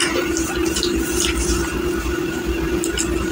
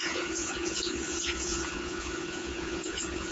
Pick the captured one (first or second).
first